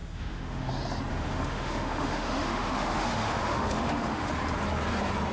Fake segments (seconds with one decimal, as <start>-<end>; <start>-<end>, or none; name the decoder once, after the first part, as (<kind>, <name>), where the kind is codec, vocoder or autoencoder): 0.0-0.7 (autoencoder, DAC-VAE); 1.1-4.3